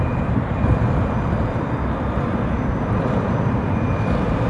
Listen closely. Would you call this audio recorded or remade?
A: remade